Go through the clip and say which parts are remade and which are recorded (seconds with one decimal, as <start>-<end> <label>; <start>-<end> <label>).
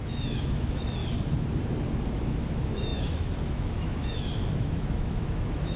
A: 0.0-1.0 remade; 1.0-2.1 recorded; 2.1-5.8 remade